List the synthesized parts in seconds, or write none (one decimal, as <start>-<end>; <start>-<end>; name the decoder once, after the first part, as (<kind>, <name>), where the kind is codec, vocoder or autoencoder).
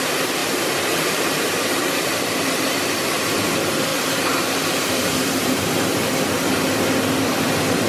0.4-3.2 (vocoder, BigVGAN v2); 3.9-5.7